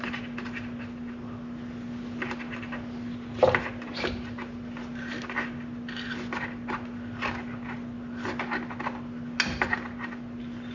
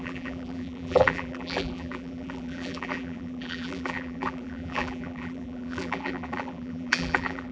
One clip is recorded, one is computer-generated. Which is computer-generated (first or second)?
second